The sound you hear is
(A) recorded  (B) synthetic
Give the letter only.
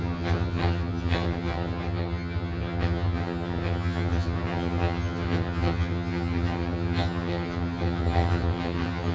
B